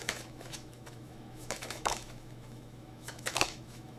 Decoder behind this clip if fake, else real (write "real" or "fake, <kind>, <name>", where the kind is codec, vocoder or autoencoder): fake, autoencoder, DAC-VAE